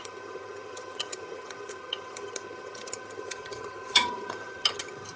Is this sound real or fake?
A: fake